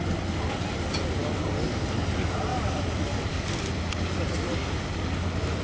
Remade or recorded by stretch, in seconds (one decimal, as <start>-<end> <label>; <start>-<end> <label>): 0.0-1.2 recorded; 1.2-2.0 remade; 2.0-2.5 recorded; 2.5-3.5 remade; 3.5-5.6 recorded